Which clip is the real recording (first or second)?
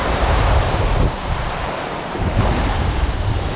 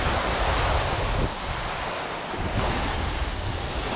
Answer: second